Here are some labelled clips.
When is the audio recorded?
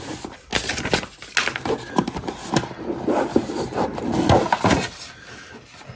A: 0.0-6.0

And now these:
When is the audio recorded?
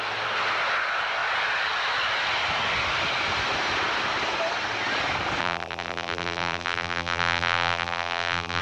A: 0.0-5.4